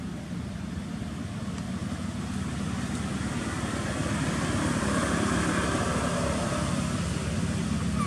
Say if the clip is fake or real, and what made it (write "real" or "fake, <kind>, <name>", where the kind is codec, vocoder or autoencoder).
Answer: real